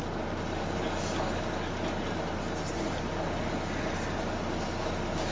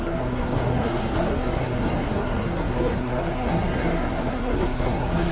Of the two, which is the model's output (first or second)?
second